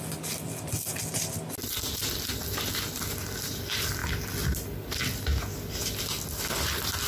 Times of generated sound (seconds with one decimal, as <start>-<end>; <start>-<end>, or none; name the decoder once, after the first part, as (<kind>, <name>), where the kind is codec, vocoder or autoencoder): none